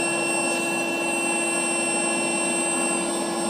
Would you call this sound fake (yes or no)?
no